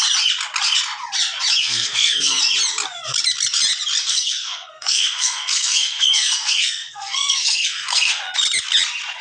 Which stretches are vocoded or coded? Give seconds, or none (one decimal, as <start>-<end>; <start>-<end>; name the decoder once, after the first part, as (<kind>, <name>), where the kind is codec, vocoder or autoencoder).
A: 1.6-2.4 (codec, SNAC); 4.0-8.2